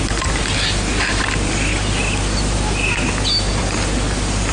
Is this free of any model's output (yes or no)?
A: yes